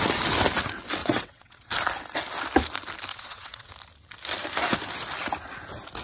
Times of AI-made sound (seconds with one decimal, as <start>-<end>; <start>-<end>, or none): 1.0-1.7; 3.1-3.7